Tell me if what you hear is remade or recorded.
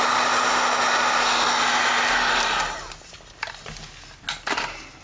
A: recorded